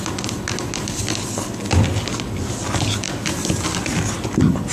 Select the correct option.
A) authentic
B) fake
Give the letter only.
A